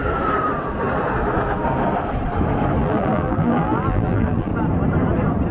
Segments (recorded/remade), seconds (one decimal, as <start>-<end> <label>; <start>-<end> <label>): 0.0-2.8 recorded; 2.8-4.5 remade; 4.5-5.5 recorded